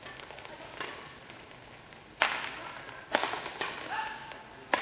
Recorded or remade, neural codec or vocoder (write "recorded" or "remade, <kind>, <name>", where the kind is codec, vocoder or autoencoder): recorded